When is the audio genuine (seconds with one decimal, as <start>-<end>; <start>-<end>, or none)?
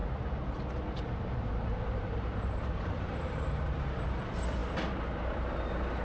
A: none